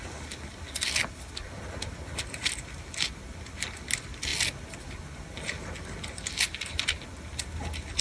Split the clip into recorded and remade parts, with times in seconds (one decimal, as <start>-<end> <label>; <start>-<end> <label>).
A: 0.0-8.0 recorded